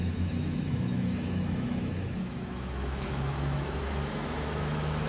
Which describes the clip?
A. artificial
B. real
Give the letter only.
A